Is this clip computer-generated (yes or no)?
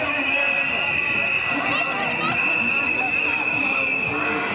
no